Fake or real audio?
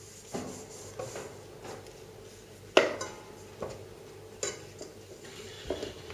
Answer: real